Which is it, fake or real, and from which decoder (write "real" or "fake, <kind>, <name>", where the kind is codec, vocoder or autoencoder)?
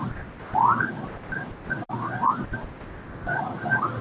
real